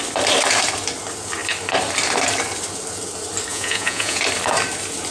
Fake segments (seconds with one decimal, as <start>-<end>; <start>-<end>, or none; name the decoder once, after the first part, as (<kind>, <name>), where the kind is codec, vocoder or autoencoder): 3.5-4.2 (vocoder, Vocos)